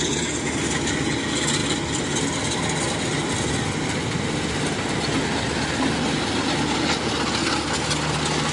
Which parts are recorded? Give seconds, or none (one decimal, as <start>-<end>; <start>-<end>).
0.0-8.5